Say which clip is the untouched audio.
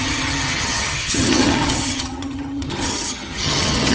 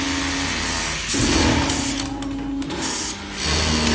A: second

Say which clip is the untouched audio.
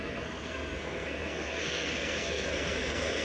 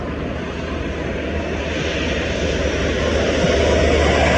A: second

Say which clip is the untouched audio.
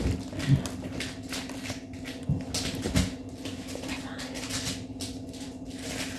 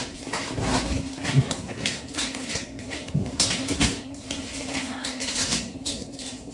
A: first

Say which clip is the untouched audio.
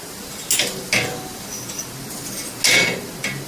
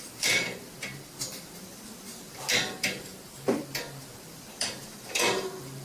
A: first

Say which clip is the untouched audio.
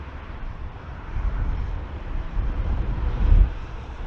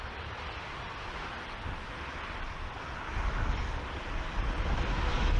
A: second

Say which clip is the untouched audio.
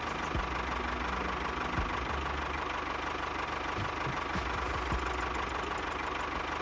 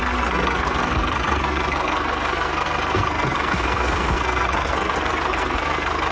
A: first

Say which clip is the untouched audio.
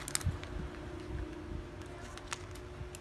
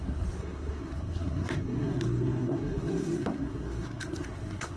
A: first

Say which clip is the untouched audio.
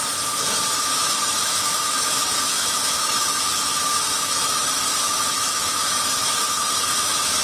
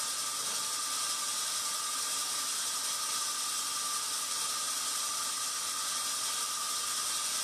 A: second